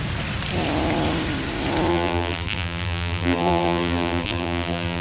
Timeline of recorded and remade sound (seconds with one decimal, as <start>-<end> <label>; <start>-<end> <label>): 0.0-1.9 recorded; 1.9-5.0 remade